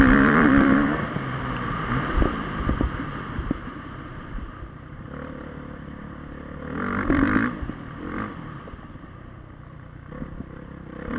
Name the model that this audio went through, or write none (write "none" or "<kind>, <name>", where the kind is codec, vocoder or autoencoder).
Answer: vocoder, BigVGAN v2